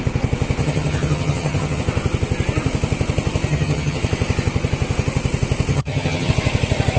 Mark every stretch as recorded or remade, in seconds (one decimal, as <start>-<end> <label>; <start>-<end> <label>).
0.0-0.6 recorded; 0.6-1.8 remade; 1.8-3.5 recorded; 3.5-4.0 remade; 4.0-5.7 recorded; 5.7-6.3 remade; 6.3-7.0 recorded